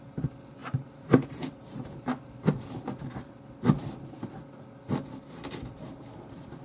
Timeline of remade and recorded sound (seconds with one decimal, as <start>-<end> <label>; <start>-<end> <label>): 0.0-0.6 recorded; 0.6-2.3 remade; 2.3-6.6 recorded